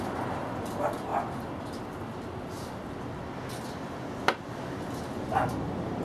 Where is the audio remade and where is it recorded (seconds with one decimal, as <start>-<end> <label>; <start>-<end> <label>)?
0.0-6.0 recorded

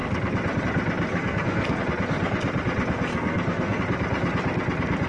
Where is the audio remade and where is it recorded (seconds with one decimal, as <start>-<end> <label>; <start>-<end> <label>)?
0.0-1.1 recorded; 1.1-1.8 remade; 1.8-3.1 recorded; 3.1-3.8 remade; 3.8-5.1 recorded

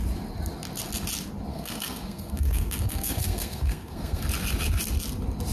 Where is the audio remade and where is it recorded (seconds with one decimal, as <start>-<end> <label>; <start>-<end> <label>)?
0.0-1.5 recorded; 1.5-4.2 remade; 4.2-5.5 recorded

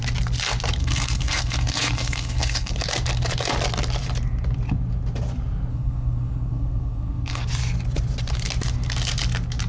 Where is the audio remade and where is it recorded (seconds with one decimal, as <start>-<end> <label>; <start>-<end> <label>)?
0.0-0.8 recorded; 0.8-2.7 remade; 2.7-5.7 recorded; 5.7-7.4 remade; 7.4-9.7 recorded

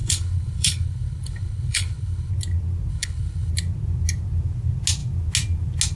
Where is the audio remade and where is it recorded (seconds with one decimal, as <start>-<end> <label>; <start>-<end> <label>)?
0.0-2.3 remade; 2.3-2.9 recorded; 2.9-3.5 remade; 3.5-6.0 recorded